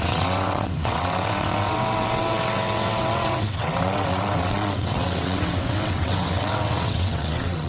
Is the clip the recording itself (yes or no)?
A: no